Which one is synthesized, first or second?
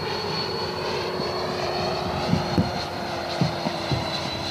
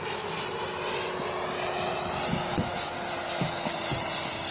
first